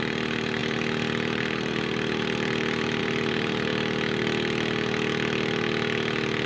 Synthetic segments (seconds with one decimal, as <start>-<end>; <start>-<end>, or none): 0.0-3.7